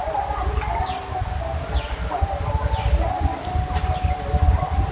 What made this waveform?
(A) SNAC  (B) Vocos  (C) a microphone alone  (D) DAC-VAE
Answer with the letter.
C